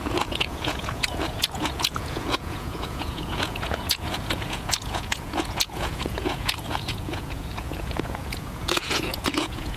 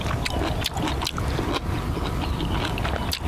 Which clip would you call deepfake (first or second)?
first